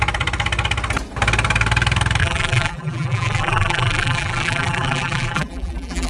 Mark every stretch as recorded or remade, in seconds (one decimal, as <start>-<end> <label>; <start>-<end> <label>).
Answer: 0.0-2.2 recorded; 2.2-6.1 remade